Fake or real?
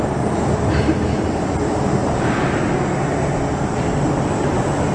real